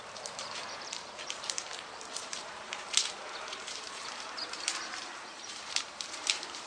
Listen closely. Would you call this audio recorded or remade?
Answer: remade